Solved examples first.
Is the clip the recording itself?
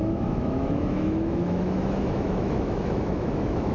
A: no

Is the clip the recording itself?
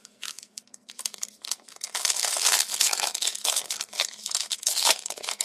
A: no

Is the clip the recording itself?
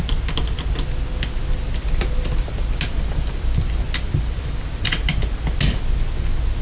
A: yes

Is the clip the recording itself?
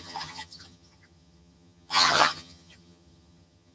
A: no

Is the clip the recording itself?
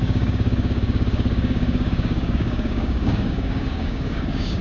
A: no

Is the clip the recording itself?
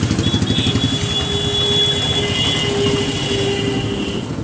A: yes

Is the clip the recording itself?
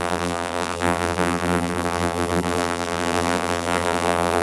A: no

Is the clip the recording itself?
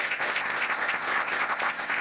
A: no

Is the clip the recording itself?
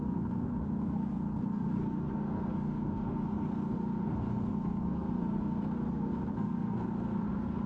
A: no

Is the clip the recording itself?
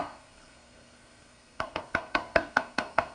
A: no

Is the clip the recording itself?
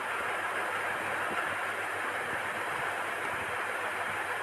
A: yes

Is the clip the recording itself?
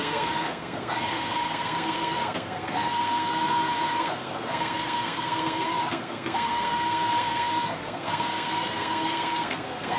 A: no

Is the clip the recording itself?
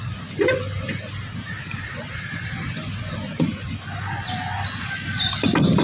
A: yes